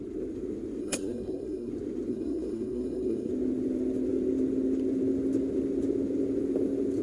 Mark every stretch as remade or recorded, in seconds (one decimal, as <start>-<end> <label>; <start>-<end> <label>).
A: 0.0-0.8 recorded; 0.8-1.7 remade; 1.7-2.1 recorded; 2.1-3.3 remade; 3.3-7.0 recorded

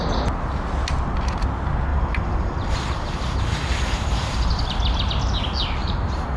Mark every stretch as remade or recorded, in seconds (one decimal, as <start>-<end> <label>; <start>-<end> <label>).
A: 0.0-1.9 recorded; 1.9-5.1 remade; 5.1-5.8 recorded; 5.8-6.4 remade

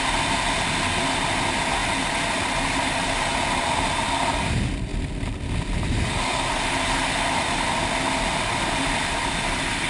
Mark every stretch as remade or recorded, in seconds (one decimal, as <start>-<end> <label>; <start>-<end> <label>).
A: 0.0-9.9 recorded

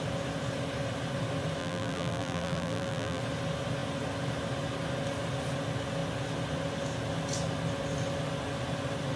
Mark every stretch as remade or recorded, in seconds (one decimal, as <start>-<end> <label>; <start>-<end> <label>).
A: 0.0-1.6 recorded; 1.6-3.2 remade; 3.2-9.2 recorded